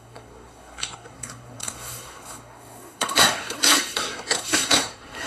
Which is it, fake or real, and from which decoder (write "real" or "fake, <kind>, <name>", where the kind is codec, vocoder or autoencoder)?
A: fake, codec, SNAC